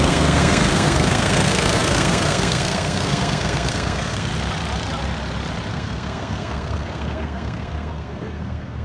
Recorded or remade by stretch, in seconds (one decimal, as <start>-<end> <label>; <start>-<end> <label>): 0.0-4.3 remade; 4.3-5.7 recorded; 5.7-8.8 remade